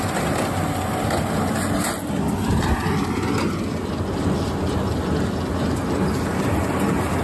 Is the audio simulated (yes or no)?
no